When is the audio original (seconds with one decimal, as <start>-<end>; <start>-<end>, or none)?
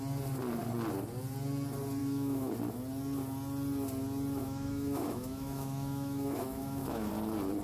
0.0-2.0; 2.5-4.4; 7.1-7.6